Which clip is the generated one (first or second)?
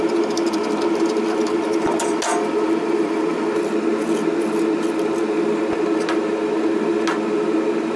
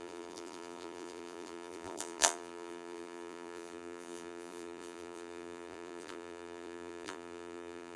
second